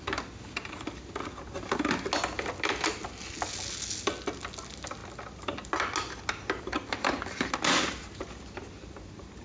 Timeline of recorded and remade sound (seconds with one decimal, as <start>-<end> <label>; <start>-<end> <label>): 0.0-9.4 recorded